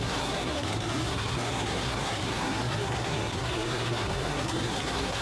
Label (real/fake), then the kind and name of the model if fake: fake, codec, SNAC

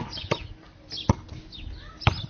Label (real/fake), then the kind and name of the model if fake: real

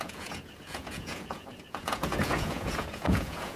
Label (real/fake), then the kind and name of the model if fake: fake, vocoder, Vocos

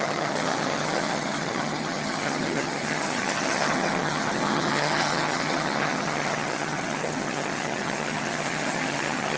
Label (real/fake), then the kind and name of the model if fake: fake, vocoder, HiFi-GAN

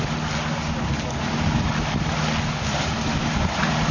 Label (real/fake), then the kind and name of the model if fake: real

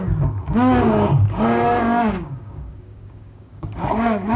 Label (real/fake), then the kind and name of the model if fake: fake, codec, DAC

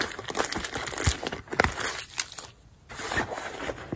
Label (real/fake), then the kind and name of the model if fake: real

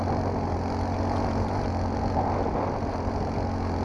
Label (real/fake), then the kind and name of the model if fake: real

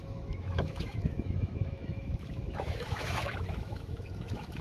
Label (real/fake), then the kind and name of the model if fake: fake, autoencoder, DAC-VAE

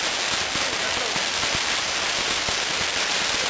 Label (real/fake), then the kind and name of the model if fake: real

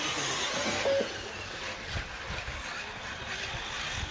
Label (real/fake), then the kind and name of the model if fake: real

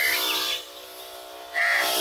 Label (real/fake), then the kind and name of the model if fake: real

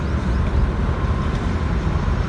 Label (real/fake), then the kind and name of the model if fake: real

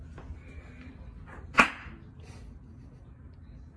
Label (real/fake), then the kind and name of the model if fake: real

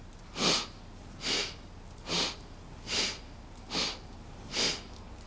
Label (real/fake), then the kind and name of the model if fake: real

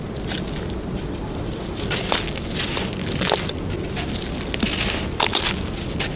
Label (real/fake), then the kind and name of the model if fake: real